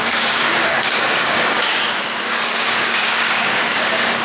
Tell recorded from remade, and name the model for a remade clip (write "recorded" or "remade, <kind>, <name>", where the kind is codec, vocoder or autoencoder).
remade, codec, DAC